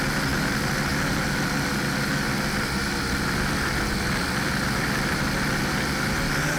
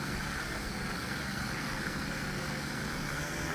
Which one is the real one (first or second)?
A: first